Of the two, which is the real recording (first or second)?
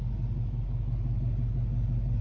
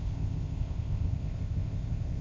first